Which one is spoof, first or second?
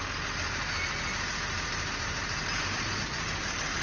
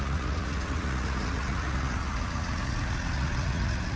second